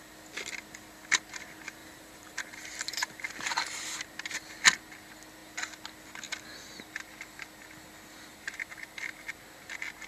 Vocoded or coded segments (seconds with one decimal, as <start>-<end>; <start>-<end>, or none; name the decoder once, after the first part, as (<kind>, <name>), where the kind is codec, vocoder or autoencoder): 1.8-4.0 (vocoder, BigVGAN v2); 8.3-9.3